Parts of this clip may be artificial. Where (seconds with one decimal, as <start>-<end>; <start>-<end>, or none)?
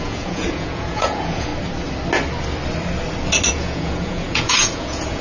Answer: 0.0-1.5; 3.5-5.2